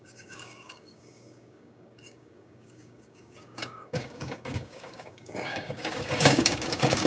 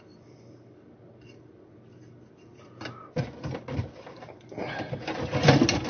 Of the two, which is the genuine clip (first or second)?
second